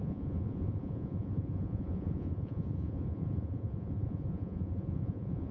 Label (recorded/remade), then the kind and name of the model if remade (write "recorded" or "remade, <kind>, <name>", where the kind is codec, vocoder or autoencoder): remade, vocoder, Vocos